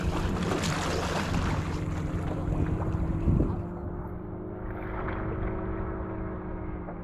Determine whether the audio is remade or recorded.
recorded